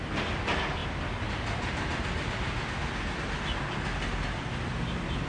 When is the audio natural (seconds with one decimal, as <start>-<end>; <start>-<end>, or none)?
0.0-5.3